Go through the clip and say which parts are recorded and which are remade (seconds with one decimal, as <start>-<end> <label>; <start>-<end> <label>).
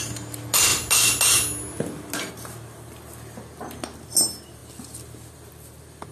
0.0-6.1 recorded